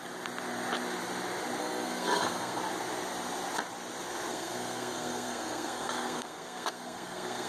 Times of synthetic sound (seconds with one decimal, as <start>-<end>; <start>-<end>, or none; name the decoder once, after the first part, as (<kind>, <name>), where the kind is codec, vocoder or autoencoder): 1.6-2.6 (codec, SNAC); 4.3-7.5